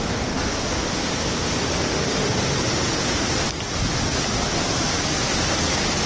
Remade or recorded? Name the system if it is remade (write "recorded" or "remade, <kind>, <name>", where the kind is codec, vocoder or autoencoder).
recorded